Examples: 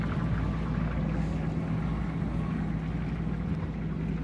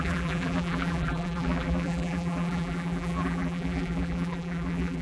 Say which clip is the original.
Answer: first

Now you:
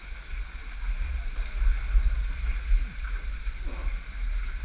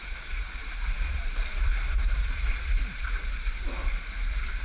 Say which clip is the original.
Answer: first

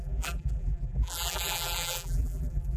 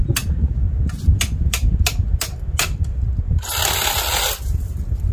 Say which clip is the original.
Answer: second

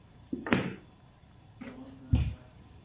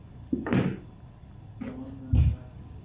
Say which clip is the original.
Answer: second